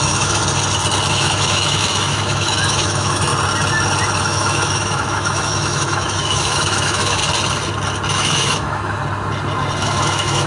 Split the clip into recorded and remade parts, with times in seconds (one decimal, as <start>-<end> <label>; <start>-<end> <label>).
0.0-0.4 remade; 0.4-1.1 recorded; 1.1-3.3 remade; 3.3-4.2 recorded; 4.2-7.2 remade; 7.2-8.1 recorded; 8.1-9.0 remade; 9.0-9.8 recorded; 9.8-10.5 remade